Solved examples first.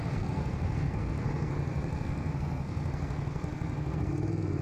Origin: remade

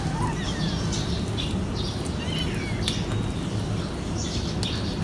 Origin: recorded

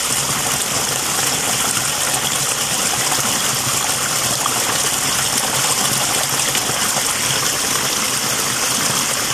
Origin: recorded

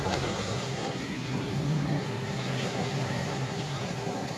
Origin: remade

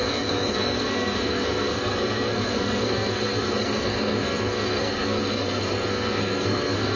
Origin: remade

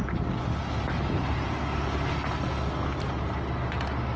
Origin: recorded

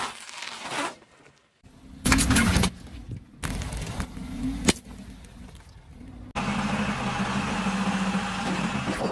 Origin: recorded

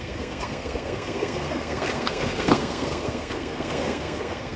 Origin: remade